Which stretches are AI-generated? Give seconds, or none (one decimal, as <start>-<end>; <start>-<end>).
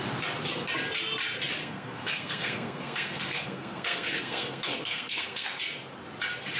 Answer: 1.6-5.6